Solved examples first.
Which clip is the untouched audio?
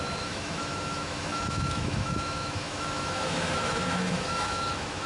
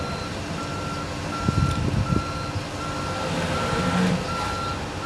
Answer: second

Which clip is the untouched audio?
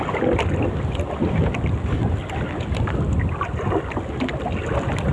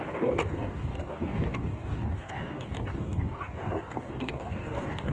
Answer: first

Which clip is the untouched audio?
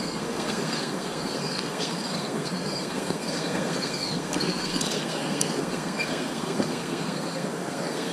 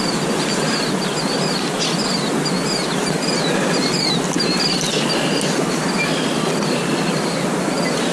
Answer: second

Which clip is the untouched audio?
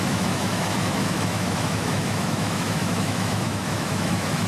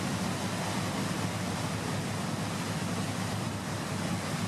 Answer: second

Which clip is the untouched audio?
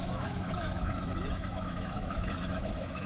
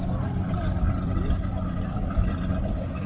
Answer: second